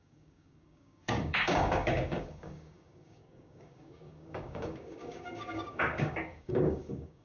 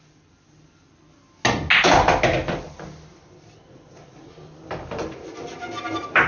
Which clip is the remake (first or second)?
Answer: first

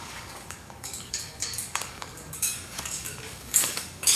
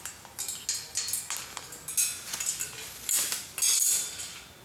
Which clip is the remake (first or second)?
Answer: first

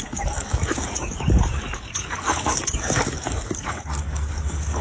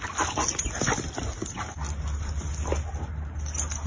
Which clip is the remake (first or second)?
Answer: first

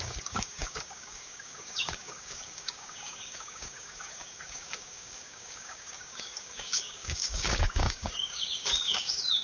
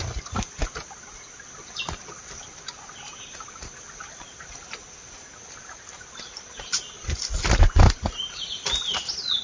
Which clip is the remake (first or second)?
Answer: first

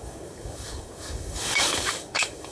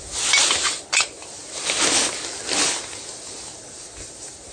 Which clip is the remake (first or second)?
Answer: first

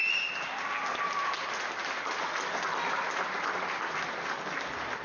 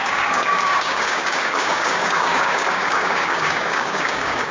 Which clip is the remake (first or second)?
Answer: second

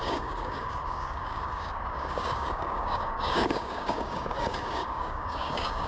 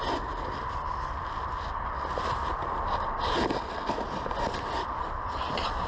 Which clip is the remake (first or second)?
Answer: first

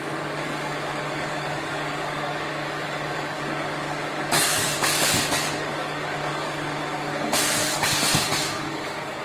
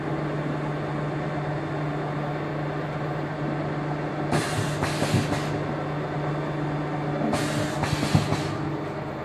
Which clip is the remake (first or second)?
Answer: first